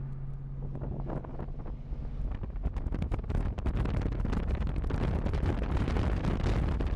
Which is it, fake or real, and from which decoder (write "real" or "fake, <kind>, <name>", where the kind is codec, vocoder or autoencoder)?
real